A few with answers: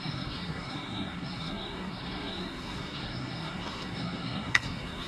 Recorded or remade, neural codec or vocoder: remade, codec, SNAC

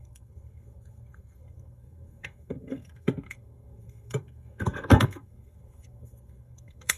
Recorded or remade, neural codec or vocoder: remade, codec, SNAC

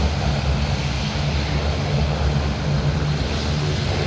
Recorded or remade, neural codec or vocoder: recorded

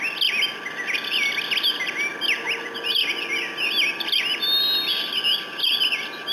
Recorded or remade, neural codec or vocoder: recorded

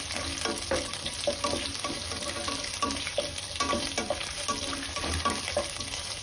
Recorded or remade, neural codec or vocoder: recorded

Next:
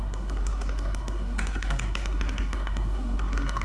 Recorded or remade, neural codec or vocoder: remade, codec, SNAC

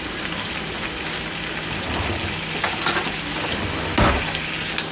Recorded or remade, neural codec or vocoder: recorded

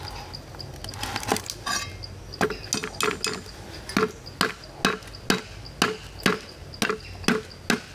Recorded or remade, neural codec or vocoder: recorded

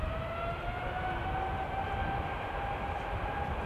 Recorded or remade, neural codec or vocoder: recorded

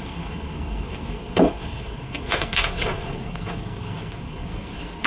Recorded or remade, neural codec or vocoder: remade, codec, SNAC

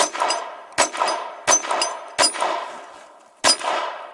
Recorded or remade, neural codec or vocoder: recorded